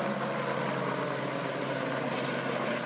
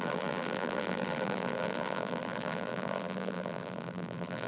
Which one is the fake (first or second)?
second